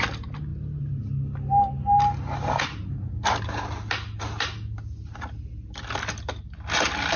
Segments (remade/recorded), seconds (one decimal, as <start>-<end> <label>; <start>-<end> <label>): 0.0-7.2 recorded